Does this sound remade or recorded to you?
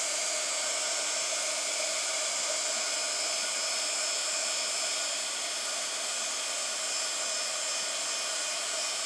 recorded